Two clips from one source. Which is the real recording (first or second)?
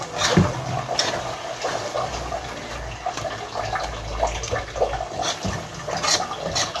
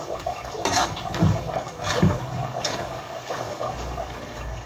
first